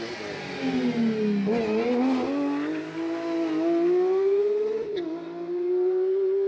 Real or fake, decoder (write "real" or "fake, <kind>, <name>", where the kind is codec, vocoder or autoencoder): real